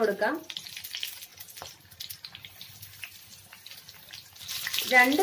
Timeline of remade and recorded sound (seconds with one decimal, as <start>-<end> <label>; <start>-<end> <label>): 0.0-5.2 recorded